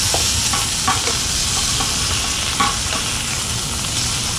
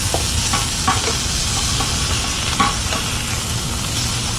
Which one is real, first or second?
second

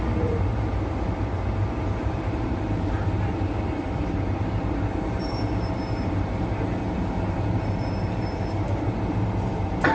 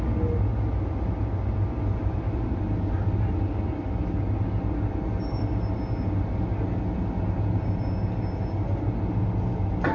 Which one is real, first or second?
second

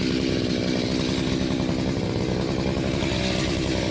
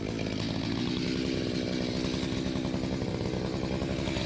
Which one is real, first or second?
second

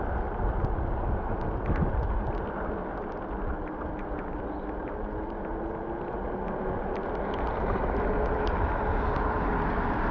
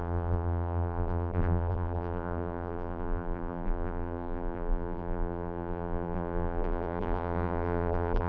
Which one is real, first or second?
first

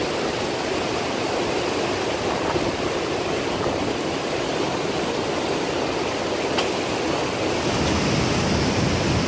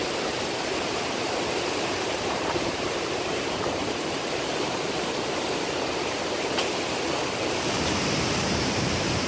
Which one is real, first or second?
first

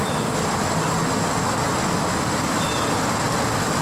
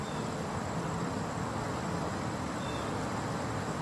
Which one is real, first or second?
first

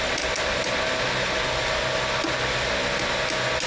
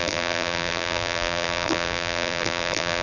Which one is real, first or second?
first